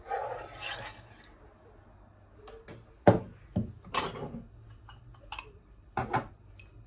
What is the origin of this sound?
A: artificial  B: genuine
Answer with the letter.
B